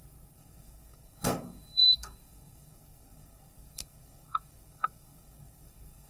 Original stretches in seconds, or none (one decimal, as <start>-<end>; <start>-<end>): none